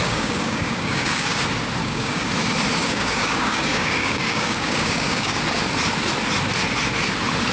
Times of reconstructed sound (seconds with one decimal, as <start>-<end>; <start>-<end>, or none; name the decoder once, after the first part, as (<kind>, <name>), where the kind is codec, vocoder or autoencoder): 0.0-1.4 (codec, DAC); 1.8-2.3; 2.8-5.4